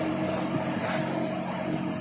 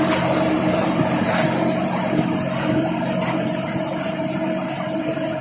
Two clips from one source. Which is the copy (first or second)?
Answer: second